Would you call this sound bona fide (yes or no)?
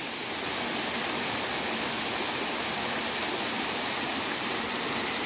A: yes